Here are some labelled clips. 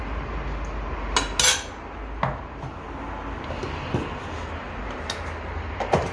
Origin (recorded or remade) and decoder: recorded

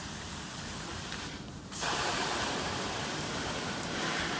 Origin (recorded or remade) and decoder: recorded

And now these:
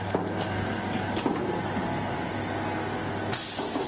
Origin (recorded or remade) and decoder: recorded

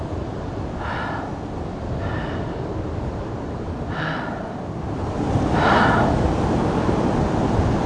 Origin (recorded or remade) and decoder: recorded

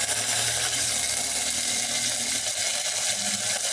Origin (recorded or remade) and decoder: recorded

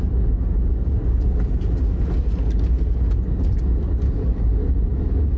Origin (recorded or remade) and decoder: recorded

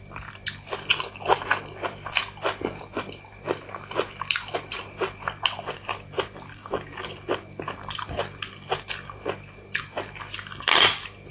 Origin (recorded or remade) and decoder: recorded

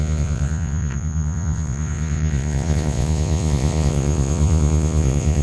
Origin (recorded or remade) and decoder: remade, vocoder, Vocos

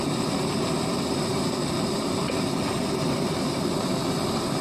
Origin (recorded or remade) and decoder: recorded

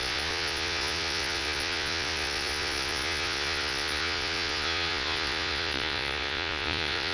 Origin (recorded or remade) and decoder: remade, vocoder, Vocos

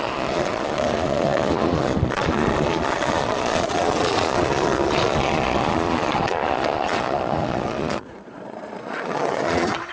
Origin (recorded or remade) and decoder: remade, vocoder, Vocos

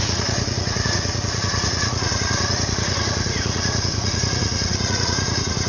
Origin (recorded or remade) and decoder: remade, vocoder, Vocos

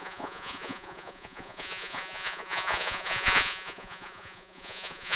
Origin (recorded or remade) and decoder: remade, vocoder, Vocos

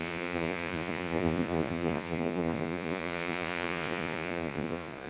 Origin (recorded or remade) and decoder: remade, vocoder, Vocos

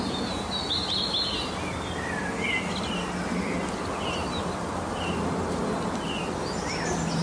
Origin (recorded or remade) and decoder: recorded